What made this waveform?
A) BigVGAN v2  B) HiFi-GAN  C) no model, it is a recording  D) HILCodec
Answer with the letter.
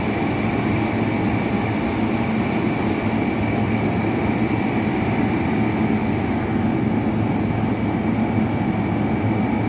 C